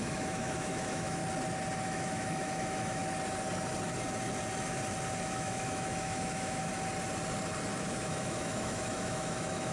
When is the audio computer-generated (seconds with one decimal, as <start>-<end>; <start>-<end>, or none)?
0.0-1.2; 1.8-3.0; 5.2-6.7; 7.8-9.7